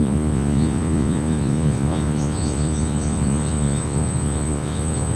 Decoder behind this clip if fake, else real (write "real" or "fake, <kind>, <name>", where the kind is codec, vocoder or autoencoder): fake, vocoder, Vocos